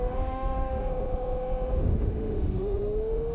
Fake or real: fake